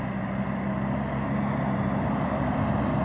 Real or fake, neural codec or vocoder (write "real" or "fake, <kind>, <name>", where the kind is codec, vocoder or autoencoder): real